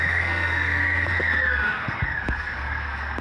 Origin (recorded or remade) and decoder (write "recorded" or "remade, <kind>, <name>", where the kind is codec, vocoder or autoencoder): remade, codec, SNAC